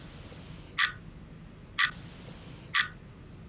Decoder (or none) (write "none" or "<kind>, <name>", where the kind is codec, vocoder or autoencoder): none